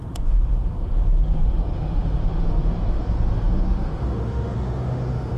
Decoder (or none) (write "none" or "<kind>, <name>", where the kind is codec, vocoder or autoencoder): autoencoder, DAC-VAE